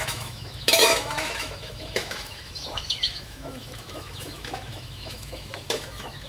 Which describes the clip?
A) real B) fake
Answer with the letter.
B